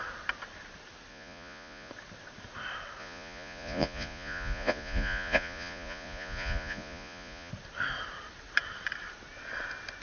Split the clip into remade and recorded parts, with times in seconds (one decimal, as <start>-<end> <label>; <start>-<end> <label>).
0.0-1.1 recorded; 1.1-1.9 remade; 1.9-3.0 recorded; 3.0-7.5 remade; 7.5-10.0 recorded